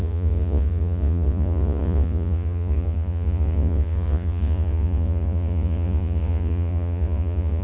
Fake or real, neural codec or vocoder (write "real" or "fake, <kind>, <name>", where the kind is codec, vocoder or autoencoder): fake, vocoder, Vocos